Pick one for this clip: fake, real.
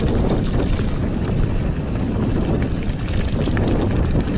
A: real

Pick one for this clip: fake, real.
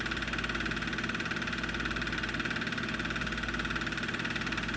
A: real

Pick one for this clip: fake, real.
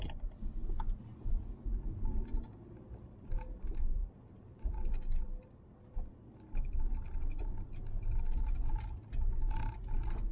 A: real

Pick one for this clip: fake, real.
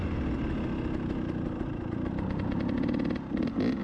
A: real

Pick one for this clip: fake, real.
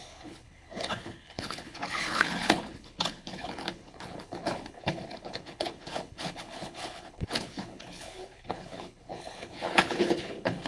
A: fake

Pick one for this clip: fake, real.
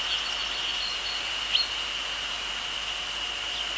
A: real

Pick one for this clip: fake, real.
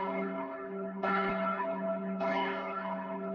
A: fake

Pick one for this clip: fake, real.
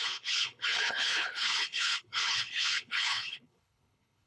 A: fake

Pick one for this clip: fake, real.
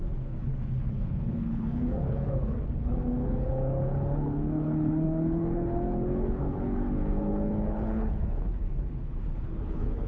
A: fake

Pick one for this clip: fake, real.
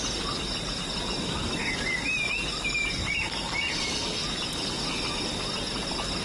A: real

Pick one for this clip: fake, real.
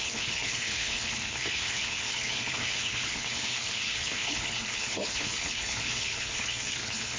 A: fake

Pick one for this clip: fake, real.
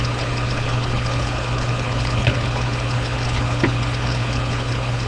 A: fake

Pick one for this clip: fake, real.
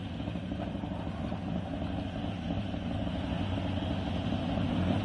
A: real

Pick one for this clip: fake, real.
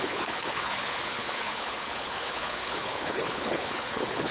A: fake